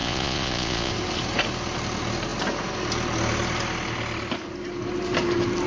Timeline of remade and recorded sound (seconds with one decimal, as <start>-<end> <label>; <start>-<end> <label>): 0.0-0.9 remade; 0.9-5.7 recorded